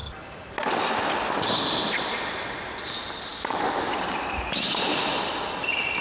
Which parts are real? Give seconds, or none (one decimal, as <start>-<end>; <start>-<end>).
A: 1.0-3.3; 5.3-6.0